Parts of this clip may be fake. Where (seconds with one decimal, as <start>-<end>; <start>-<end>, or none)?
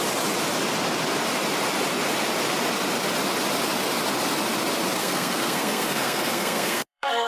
5.0-7.3